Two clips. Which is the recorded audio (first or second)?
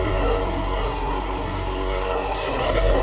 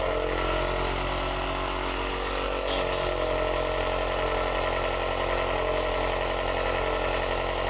second